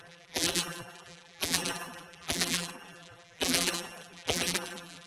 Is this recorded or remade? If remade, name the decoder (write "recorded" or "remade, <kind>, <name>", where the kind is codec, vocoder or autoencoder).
remade, vocoder, BigVGAN v2